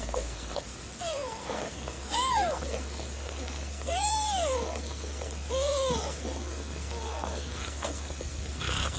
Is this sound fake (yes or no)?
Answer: yes